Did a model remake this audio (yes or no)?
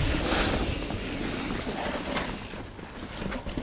no